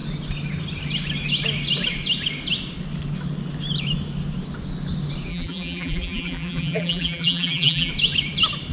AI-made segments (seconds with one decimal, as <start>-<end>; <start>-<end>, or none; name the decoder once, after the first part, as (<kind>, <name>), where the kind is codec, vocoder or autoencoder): 5.3-7.9 (vocoder, BigVGAN v2)